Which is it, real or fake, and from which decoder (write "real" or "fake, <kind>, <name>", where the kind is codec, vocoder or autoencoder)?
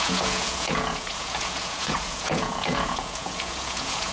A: fake, vocoder, Vocos